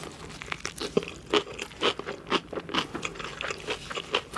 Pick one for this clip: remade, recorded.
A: recorded